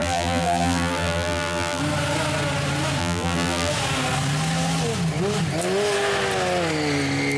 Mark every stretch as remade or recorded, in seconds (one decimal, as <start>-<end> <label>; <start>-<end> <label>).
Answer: 0.0-1.8 remade; 1.8-3.0 recorded; 3.0-3.7 remade; 3.7-7.4 recorded